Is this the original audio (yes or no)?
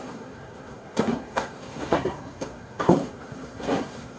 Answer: no